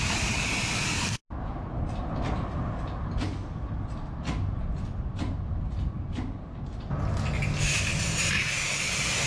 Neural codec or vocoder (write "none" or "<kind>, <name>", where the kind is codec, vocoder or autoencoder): none